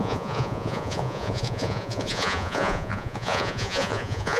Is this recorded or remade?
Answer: remade